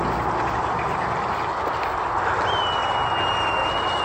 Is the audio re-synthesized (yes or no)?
no